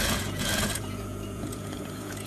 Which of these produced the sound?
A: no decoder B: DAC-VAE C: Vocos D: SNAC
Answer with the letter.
C